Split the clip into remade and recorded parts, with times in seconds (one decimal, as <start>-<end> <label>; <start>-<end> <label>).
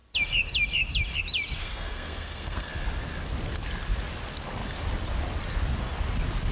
0.0-1.6 recorded; 1.6-2.7 remade; 2.7-6.5 recorded